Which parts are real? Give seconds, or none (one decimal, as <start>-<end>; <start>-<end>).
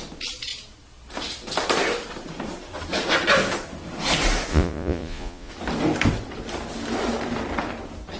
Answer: 0.0-4.5; 5.5-8.2